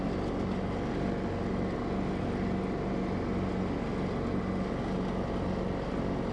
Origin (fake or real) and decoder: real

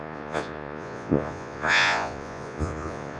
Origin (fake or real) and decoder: fake, vocoder, Vocos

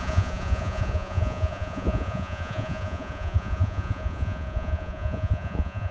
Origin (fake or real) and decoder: fake, vocoder, Vocos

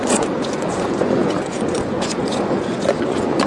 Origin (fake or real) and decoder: fake, vocoder, Vocos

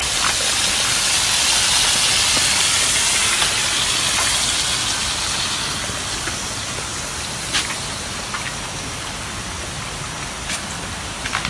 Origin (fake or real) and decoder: real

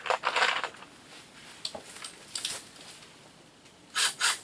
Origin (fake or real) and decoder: real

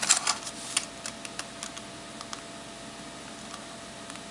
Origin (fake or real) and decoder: real